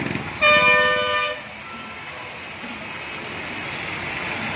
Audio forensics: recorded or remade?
recorded